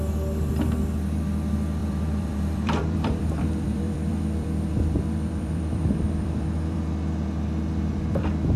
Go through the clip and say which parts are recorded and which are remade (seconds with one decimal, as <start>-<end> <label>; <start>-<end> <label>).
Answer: 0.0-1.8 recorded; 1.8-6.8 remade; 6.8-8.6 recorded